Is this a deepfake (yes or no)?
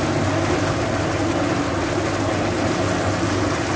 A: no